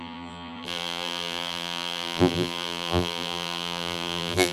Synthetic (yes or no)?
yes